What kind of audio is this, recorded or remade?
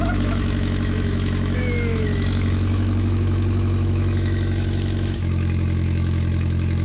remade